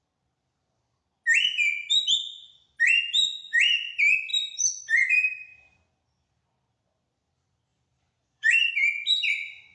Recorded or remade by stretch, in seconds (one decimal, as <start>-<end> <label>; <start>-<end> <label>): 0.0-4.3 recorded; 4.3-4.8 remade; 4.8-7.7 recorded; 7.7-8.7 remade; 8.7-9.7 recorded